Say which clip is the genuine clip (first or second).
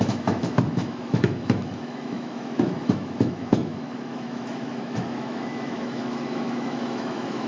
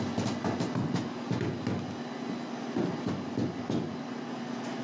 second